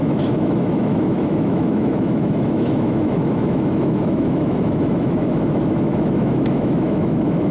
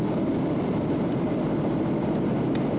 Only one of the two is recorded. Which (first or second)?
second